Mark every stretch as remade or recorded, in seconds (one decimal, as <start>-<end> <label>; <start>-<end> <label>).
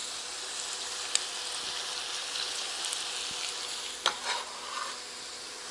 0.0-2.2 recorded; 2.2-2.8 remade; 2.8-5.7 recorded